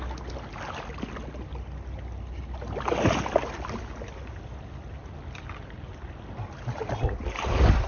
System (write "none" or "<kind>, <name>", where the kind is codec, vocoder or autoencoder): none